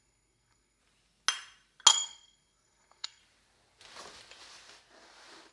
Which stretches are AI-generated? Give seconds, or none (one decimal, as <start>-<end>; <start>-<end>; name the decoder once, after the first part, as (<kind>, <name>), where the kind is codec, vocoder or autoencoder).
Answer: 0.0-0.8 (codec, SNAC); 1.9-3.2